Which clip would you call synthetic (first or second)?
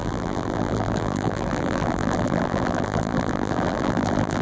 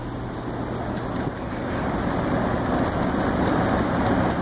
first